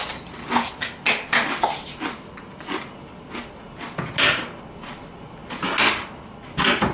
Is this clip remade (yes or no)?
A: no